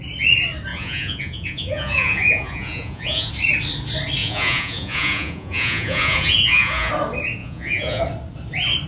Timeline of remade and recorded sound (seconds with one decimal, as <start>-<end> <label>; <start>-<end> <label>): 0.0-0.7 recorded; 0.7-3.3 remade; 3.3-4.2 recorded; 4.2-6.9 remade; 6.9-7.4 recorded; 7.4-8.0 remade; 8.0-8.9 recorded